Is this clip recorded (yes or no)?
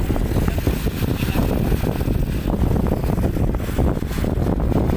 yes